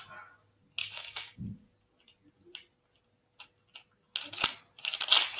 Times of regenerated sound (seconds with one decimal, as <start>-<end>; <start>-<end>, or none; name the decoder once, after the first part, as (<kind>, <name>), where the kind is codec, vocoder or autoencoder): 0.8-1.4 (codec, DAC)